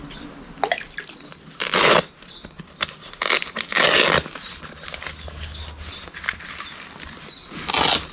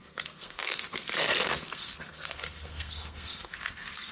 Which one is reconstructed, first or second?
second